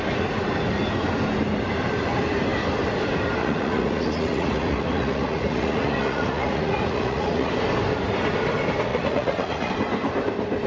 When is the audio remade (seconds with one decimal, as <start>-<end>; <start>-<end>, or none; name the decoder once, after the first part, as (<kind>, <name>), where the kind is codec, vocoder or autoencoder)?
3.4-7.5 (vocoder, Vocos); 8.9-9.7